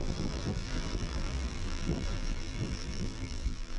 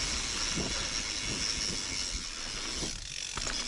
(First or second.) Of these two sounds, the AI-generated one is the first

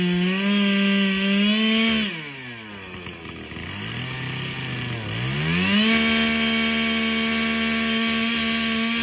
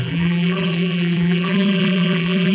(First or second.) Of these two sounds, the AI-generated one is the second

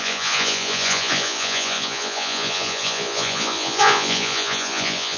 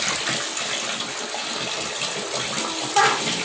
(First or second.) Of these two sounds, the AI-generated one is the first